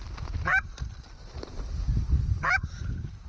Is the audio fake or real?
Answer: real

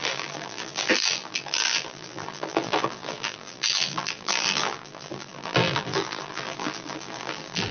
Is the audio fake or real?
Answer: fake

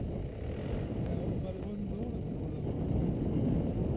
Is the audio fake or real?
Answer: real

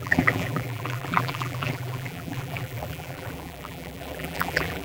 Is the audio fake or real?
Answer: fake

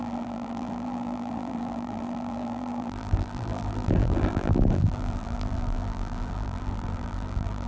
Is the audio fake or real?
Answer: fake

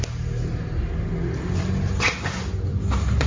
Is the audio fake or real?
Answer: real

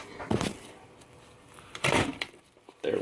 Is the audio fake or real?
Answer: fake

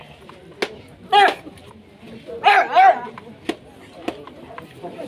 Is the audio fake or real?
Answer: real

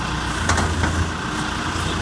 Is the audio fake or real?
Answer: real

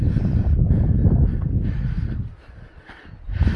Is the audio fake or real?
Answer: fake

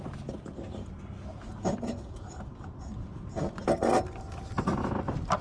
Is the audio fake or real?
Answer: real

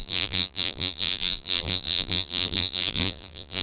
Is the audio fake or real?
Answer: fake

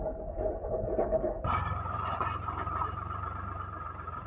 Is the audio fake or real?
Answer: fake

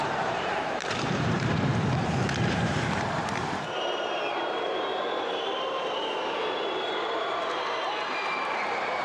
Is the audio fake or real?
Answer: fake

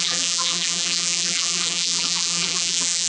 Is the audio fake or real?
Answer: fake